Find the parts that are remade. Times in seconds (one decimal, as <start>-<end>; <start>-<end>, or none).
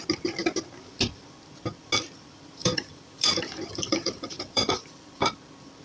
2.6-5.3